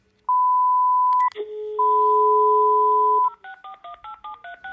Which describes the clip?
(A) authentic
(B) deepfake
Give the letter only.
A